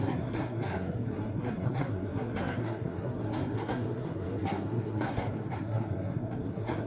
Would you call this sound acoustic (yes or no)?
no